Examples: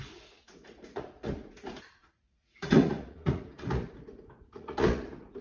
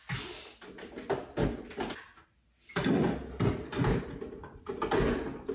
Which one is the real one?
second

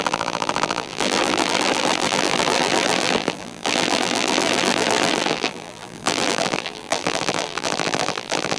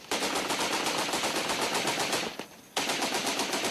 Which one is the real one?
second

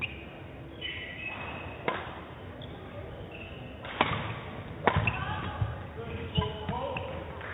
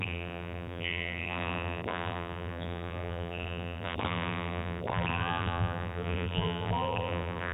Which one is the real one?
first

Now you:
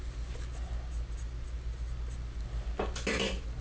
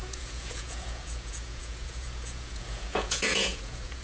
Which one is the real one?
first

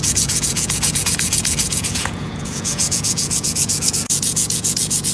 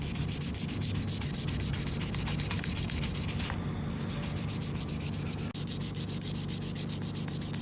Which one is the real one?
second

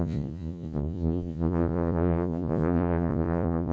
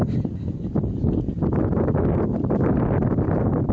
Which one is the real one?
second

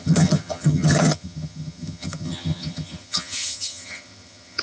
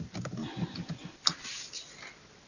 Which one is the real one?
second